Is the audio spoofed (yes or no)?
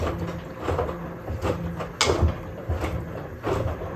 no